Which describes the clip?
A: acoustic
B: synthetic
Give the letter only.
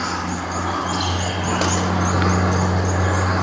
A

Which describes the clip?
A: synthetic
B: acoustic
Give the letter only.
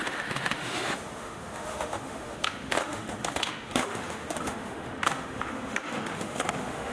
A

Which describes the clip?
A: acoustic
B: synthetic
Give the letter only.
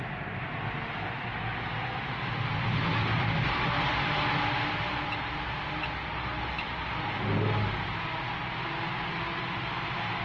A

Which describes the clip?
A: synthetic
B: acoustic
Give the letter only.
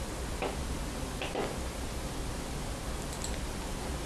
B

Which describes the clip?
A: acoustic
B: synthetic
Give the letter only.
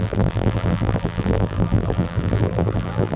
B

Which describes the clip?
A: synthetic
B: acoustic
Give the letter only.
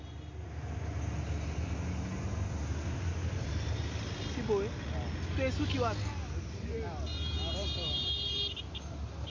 B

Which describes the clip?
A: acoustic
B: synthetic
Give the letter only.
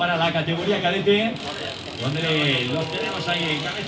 A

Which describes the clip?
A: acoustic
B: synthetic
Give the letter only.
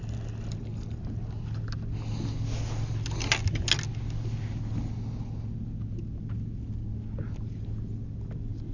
A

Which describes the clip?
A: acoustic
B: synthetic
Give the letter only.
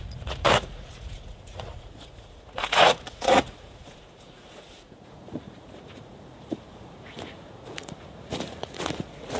B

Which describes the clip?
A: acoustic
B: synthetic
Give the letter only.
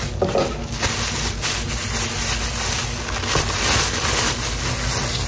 A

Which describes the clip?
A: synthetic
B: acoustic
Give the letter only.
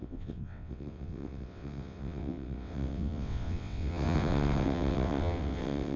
A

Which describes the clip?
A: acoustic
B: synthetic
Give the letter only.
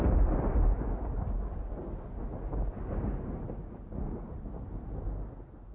A